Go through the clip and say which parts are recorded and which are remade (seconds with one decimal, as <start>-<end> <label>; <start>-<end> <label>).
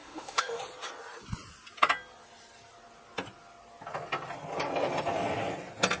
0.0-0.6 remade; 0.6-6.0 recorded